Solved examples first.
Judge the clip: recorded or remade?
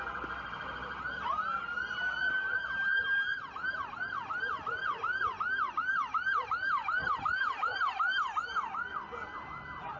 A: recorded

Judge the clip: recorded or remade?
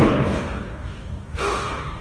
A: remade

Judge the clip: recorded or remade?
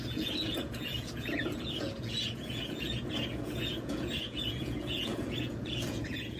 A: remade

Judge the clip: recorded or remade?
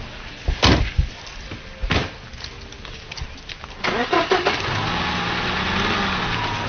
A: recorded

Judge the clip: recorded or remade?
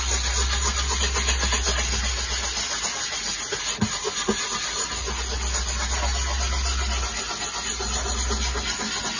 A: recorded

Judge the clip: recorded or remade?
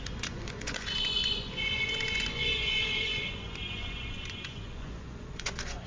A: remade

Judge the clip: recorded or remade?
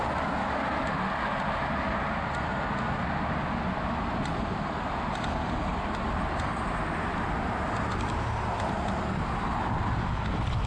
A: recorded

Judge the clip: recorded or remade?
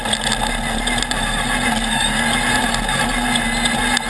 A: recorded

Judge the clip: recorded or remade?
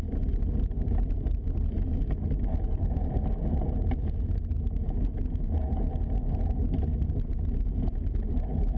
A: recorded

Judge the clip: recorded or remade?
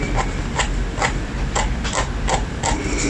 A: recorded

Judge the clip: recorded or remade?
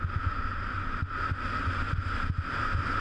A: recorded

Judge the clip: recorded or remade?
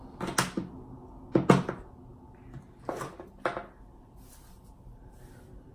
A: recorded